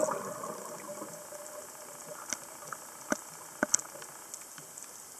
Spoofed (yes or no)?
no